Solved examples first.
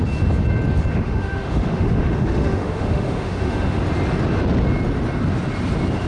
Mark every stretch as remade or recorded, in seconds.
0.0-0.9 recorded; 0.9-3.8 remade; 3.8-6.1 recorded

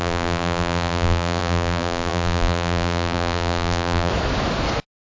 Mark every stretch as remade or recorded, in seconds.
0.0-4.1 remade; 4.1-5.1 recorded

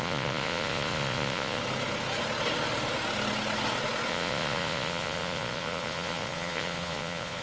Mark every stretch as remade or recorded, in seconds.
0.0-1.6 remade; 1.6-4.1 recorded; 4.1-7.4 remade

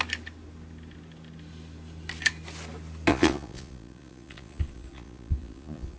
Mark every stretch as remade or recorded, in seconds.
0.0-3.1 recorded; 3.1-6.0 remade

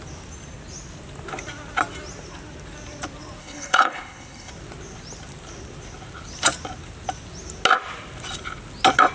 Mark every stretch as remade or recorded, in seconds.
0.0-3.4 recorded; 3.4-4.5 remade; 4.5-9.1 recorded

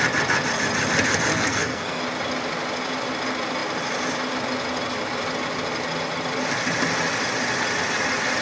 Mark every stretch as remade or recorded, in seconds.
0.0-1.3 recorded; 1.3-2.0 remade; 2.0-8.4 recorded

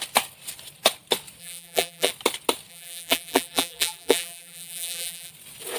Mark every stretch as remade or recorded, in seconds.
0.0-1.4 recorded; 1.4-2.1 remade; 2.1-2.7 recorded; 2.7-5.3 remade; 5.3-5.8 recorded